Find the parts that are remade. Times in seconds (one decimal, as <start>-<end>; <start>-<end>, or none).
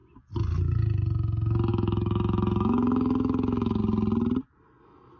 1.7-3.8